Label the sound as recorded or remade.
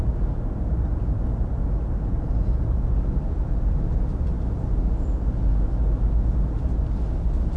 recorded